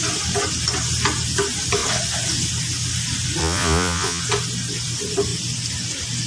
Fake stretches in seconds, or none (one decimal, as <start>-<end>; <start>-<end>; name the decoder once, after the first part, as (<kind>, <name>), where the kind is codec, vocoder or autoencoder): 3.4-4.2 (vocoder, Vocos)